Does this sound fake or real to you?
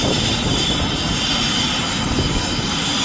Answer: real